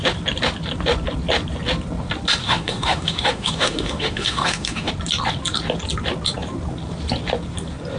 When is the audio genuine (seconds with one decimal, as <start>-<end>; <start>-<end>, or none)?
0.0-2.4; 4.9-8.0

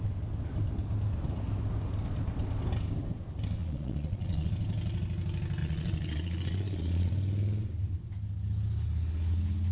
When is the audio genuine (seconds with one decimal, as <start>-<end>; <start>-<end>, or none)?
0.0-3.6; 4.5-5.6; 7.1-9.7

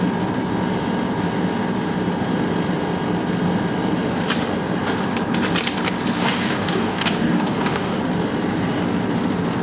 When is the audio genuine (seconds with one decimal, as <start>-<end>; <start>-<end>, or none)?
0.0-6.2; 8.0-9.6

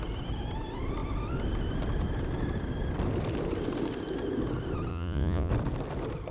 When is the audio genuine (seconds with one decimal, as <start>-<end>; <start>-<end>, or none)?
0.0-4.9; 5.5-6.3

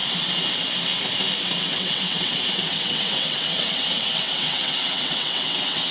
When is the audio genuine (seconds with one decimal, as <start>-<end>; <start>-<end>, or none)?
0.0-1.6